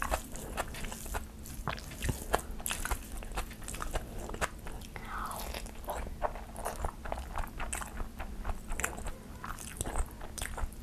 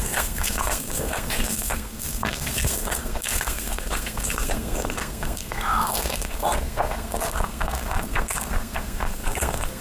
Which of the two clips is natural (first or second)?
first